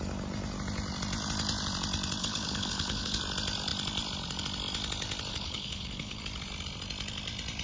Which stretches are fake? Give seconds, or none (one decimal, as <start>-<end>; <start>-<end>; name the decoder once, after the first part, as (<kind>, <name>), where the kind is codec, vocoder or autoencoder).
2.2-3.2 (codec, HILCodec); 5.3-6.2